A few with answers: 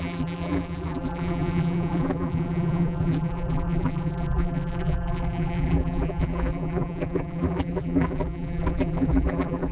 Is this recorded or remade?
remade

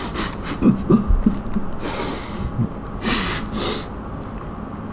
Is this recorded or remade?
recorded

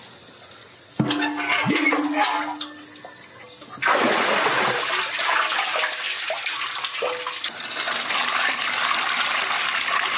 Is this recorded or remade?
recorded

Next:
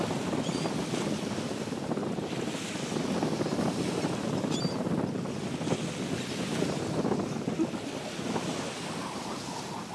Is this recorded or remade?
recorded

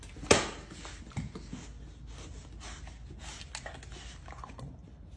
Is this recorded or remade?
recorded